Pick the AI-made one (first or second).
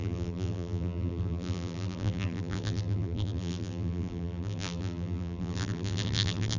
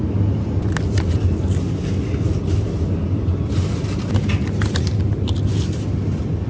first